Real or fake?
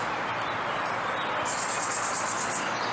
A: real